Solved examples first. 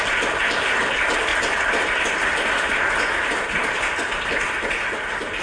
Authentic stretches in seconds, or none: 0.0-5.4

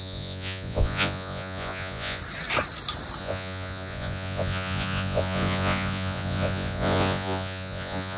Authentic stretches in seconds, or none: 2.2-3.2

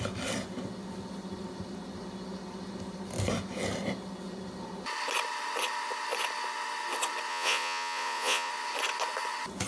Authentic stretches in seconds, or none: 0.0-7.3; 8.5-9.7

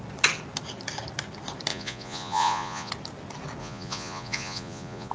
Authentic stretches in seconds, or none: 0.0-1.7; 2.9-3.6

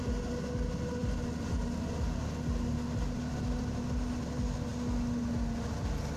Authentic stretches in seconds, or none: 0.0-6.2

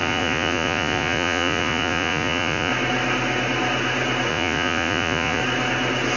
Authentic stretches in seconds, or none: 2.7-4.3; 5.4-6.2

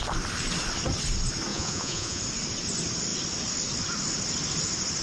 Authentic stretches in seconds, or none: 0.0-1.5; 2.2-5.0

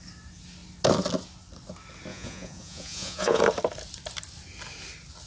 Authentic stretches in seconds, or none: 0.0-2.1; 3.4-5.3